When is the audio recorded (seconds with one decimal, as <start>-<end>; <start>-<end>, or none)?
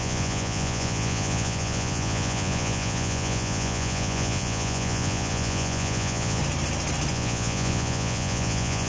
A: 6.4-7.1